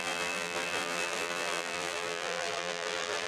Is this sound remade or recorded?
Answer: remade